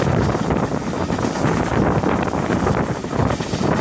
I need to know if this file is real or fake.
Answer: real